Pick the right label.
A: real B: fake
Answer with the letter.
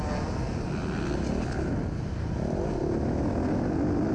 A